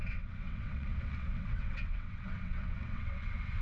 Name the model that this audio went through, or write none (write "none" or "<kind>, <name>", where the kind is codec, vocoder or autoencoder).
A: vocoder, WaveNeXt